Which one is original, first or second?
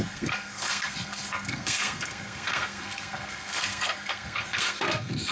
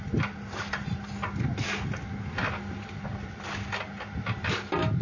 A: second